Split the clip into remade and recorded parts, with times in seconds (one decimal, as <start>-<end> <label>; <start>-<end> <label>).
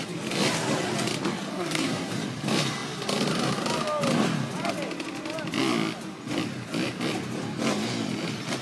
0.0-1.5 recorded; 1.5-2.1 remade; 2.1-8.6 recorded